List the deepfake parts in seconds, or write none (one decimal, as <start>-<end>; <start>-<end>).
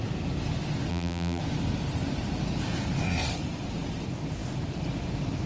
0.9-1.4